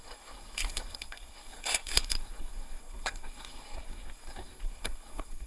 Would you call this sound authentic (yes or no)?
no